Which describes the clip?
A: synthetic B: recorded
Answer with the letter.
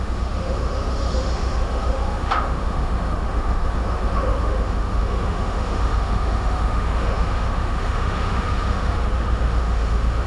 A